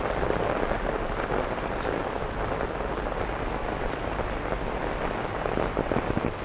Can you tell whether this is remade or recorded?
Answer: recorded